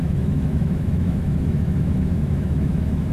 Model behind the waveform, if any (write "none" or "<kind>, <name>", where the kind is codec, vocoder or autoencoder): autoencoder, DAC-VAE